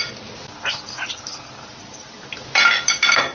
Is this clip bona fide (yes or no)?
yes